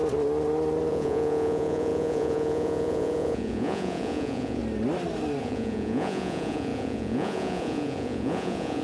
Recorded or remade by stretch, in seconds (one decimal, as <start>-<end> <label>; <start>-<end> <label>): 0.0-0.9 recorded; 0.9-4.6 remade; 4.6-5.4 recorded; 5.4-8.8 remade